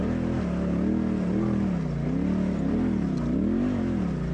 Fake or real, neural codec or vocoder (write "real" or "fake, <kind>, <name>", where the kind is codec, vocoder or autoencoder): real